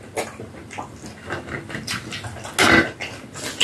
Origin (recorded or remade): recorded